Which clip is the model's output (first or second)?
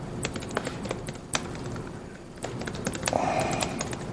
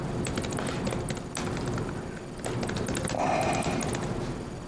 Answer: first